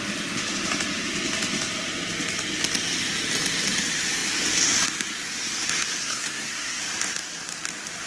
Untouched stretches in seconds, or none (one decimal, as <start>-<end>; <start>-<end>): 0.0-6.0; 6.8-8.1